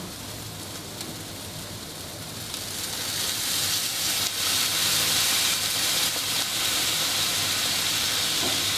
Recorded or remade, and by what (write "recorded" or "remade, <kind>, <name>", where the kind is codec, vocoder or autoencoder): recorded